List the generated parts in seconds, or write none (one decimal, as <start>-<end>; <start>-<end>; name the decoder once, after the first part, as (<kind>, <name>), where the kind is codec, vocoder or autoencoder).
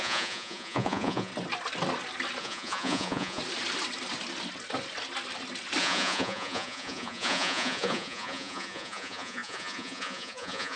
0.0-1.3 (vocoder, Vocos); 2.4-3.4; 5.8-10.8